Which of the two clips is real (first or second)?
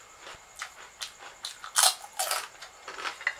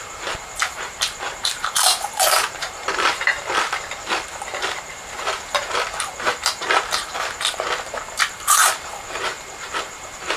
first